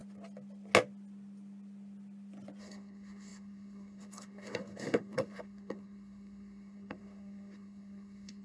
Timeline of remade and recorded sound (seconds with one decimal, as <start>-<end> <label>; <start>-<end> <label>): 0.0-2.6 recorded; 2.6-8.4 remade